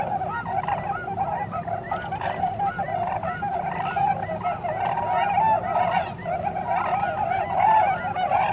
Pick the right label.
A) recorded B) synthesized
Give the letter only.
A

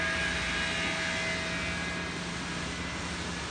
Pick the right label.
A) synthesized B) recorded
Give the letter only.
B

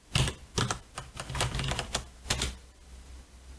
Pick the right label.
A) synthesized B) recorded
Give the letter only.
B